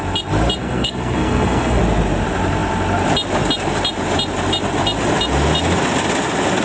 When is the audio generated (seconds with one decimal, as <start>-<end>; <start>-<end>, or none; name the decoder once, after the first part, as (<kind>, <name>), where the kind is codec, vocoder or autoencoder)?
0.6-1.8 (codec, SNAC)